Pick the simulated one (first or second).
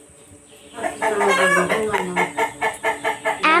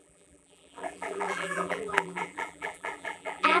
second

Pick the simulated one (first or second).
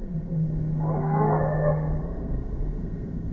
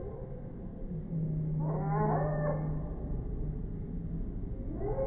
first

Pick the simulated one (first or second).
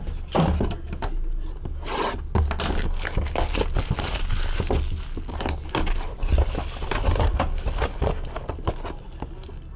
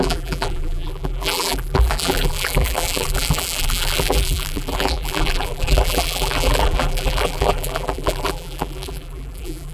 second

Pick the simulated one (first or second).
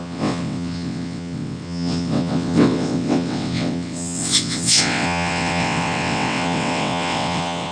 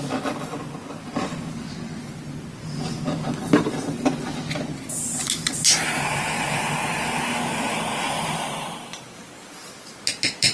first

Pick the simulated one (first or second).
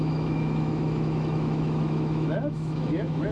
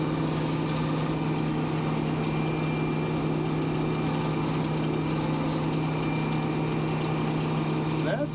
first